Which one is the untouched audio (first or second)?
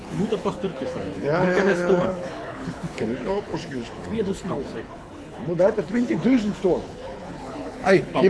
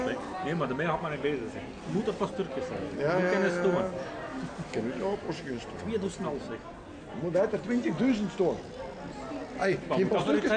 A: second